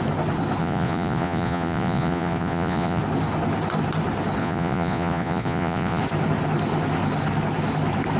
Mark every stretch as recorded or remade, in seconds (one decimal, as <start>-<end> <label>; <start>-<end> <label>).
0.0-0.6 recorded; 0.6-3.0 remade; 3.0-4.4 recorded; 4.4-6.0 remade; 6.0-8.2 recorded